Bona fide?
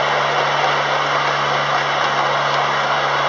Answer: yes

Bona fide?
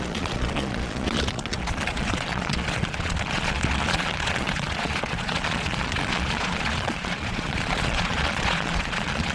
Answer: no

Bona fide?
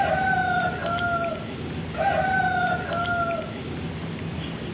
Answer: yes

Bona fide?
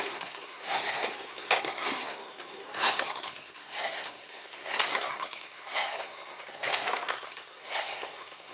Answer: no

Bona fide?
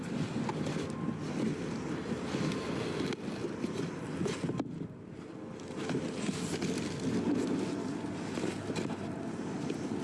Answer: yes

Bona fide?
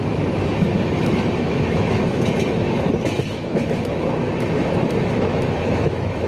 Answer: no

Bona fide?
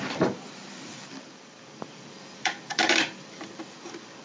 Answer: no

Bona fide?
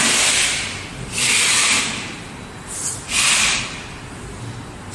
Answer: no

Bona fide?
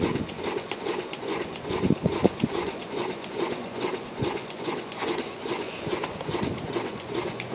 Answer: no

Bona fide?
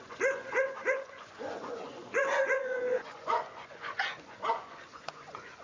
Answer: no